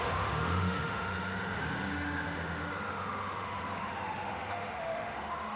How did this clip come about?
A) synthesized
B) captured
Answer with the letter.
A